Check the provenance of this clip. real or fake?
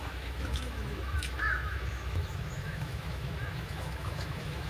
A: fake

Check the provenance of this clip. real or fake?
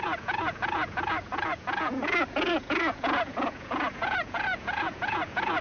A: fake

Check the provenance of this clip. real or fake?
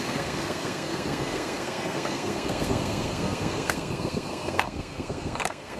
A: fake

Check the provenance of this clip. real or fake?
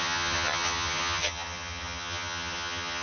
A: fake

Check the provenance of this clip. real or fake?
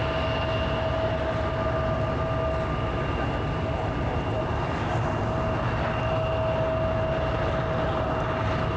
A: real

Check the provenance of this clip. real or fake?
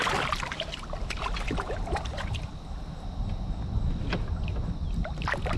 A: real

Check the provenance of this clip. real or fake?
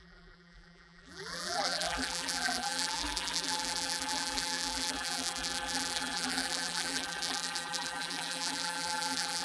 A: fake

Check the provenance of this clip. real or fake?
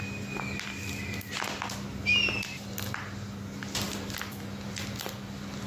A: real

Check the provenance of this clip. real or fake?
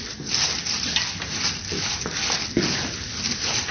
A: real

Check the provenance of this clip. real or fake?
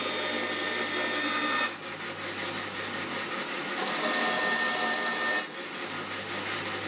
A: real